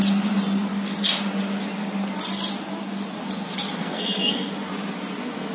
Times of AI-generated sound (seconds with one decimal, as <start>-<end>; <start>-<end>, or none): 3.8-4.5